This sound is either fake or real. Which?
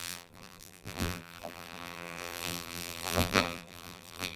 fake